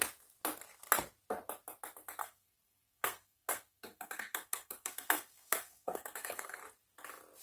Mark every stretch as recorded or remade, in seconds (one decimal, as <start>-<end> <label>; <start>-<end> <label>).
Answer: 0.0-2.2 recorded; 2.2-6.6 remade; 6.6-7.4 recorded